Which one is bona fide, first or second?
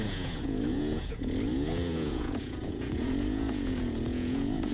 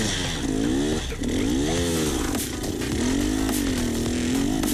second